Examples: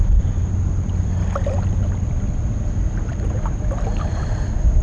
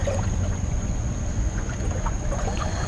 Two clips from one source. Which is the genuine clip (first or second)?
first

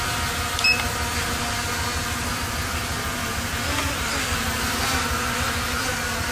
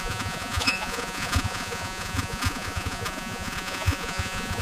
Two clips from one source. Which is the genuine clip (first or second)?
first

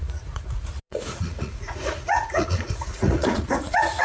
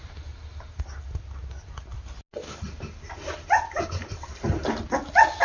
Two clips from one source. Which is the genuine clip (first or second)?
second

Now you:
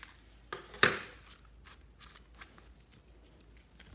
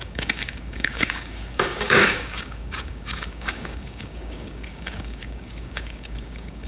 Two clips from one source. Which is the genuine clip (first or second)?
first